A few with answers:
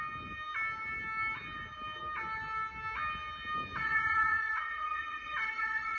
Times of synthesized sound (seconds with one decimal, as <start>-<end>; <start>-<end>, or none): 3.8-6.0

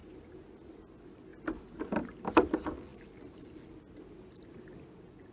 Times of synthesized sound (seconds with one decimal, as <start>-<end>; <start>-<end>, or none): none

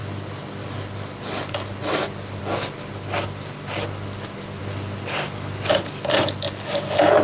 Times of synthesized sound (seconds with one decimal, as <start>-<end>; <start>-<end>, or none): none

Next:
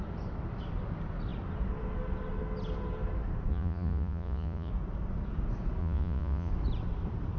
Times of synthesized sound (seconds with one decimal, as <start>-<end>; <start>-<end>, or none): 3.5-4.7; 5.8-6.5